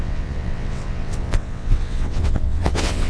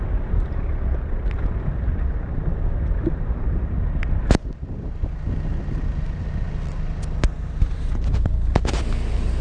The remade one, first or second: first